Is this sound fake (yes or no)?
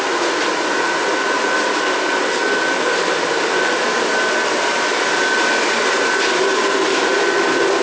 no